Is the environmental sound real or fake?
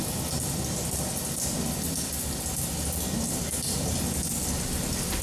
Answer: real